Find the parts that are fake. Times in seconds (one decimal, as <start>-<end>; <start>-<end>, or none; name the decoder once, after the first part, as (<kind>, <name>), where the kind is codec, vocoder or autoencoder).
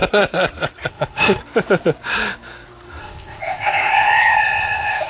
0.9-1.4 (codec, ZipCodec); 3.0-5.1